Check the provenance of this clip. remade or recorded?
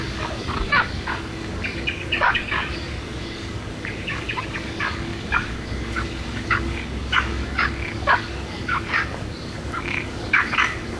remade